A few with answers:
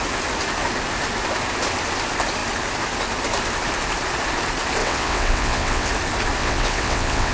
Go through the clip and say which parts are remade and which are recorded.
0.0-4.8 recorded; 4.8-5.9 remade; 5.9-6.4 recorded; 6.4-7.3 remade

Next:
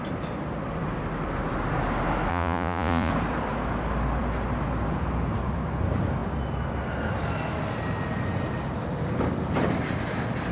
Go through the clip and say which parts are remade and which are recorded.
0.0-2.3 recorded; 2.3-3.1 remade; 3.1-10.5 recorded

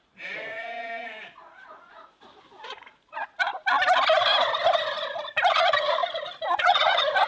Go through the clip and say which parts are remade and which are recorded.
0.0-3.5 remade; 3.5-5.5 recorded; 5.5-6.0 remade; 6.0-6.6 recorded; 6.6-7.3 remade

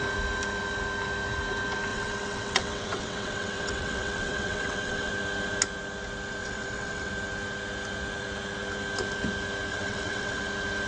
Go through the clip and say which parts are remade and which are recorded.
0.0-1.9 recorded; 1.9-5.1 remade; 5.1-6.4 recorded; 6.4-7.1 remade; 7.1-9.7 recorded; 9.7-10.4 remade; 10.4-10.9 recorded

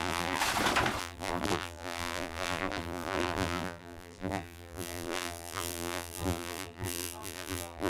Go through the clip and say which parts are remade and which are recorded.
0.0-0.4 remade; 0.4-1.0 recorded; 1.0-7.9 remade